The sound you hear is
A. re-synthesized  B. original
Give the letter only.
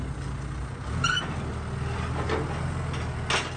B